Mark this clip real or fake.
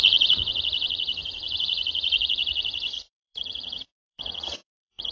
fake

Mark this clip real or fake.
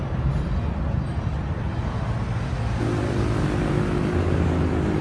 real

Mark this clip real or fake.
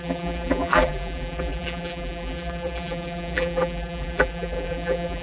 fake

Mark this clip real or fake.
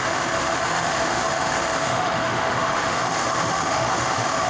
fake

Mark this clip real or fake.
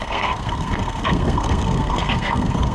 fake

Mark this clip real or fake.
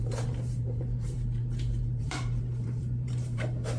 fake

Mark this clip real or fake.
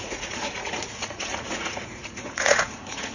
fake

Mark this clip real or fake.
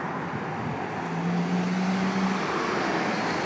real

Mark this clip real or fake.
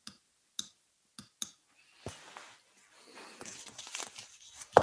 real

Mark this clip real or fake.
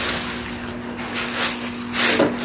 real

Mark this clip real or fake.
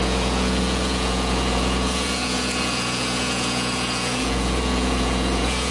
fake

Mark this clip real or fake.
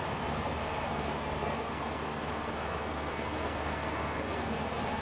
fake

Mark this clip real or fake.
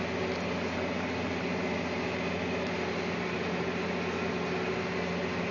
real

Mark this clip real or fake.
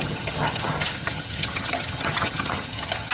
fake